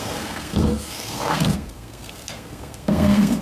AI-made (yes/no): yes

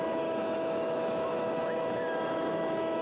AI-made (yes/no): yes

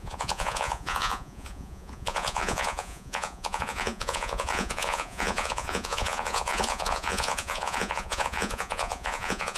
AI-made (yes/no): yes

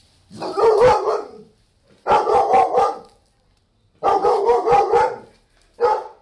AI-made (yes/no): no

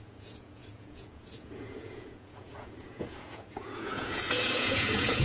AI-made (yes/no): yes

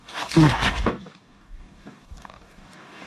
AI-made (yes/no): yes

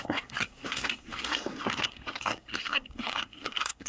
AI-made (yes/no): yes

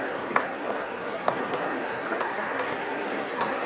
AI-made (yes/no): yes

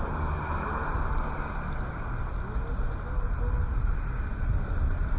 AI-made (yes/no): no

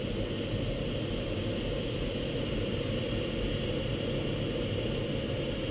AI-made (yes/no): no